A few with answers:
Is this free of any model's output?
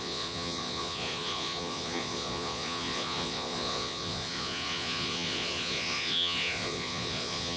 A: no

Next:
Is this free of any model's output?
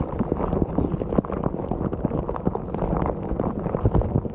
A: yes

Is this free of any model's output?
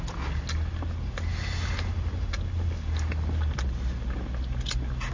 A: yes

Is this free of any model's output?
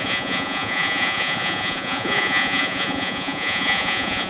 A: no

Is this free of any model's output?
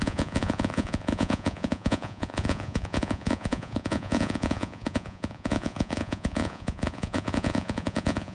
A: no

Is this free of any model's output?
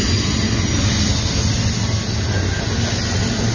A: yes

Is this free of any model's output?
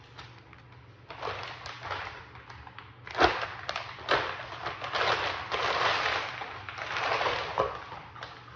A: yes